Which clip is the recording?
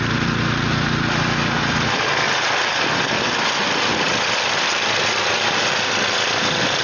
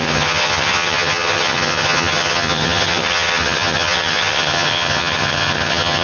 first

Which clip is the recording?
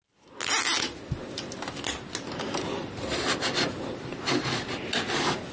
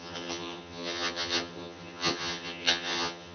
first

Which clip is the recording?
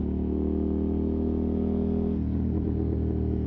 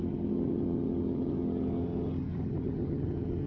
first